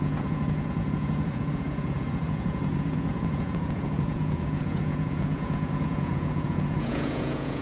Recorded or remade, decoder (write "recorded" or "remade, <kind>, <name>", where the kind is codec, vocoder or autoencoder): remade, vocoder, Vocos